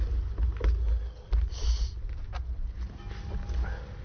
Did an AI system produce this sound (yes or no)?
no